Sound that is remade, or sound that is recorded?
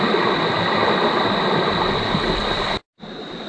recorded